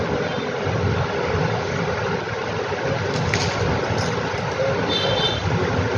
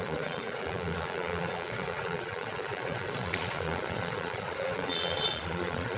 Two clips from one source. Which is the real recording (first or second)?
first